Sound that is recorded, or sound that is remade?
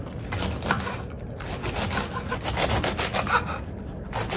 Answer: recorded